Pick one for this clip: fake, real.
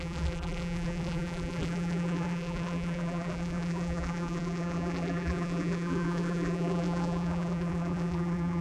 fake